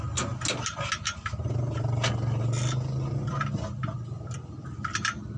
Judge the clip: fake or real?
real